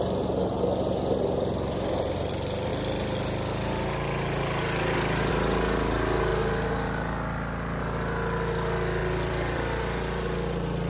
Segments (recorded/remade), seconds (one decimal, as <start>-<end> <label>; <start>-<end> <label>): 0.0-9.0 recorded; 9.0-9.8 remade; 9.8-10.9 recorded